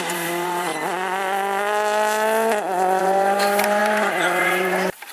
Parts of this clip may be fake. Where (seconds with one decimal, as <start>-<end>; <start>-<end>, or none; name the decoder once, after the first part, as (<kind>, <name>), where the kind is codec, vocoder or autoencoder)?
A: 0.0-0.7 (vocoder, BigVGAN v2); 3.0-5.1